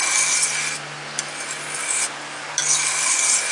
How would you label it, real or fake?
real